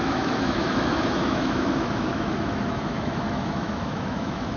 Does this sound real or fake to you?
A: fake